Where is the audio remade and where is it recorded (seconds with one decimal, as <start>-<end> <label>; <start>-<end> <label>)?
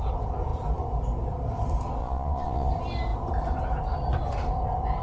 0.0-2.0 recorded; 2.0-2.7 remade; 2.7-5.0 recorded